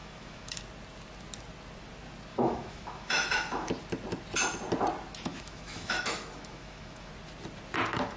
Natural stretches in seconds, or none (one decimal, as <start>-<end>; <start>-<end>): 0.6-2.3; 3.7-5.3; 7.1-8.2